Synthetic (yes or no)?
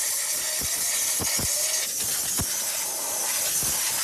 no